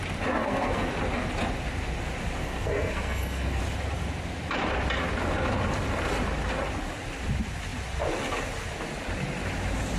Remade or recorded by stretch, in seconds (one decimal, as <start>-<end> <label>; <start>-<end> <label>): 0.0-0.4 recorded; 0.4-0.9 remade; 0.9-2.4 recorded; 2.4-3.6 remade; 3.6-10.0 recorded

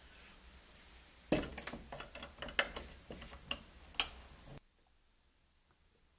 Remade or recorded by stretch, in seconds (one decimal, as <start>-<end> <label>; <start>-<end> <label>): 0.0-6.2 recorded

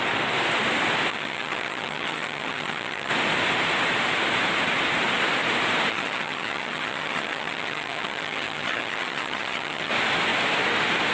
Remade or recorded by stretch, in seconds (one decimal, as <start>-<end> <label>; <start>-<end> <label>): 0.0-1.1 recorded; 1.1-3.1 remade; 3.1-5.9 recorded; 5.9-9.9 remade; 9.9-11.1 recorded

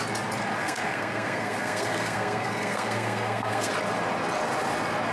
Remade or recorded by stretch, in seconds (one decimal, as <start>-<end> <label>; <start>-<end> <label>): 0.0-0.6 recorded; 0.6-3.7 remade; 3.7-5.1 recorded

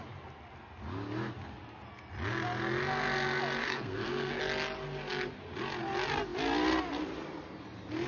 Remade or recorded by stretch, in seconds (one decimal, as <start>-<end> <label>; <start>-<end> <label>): 0.0-3.6 recorded; 3.6-4.4 remade; 4.4-8.1 recorded